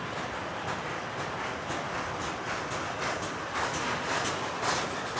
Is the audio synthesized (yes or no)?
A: no